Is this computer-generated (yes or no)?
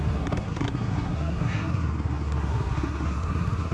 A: yes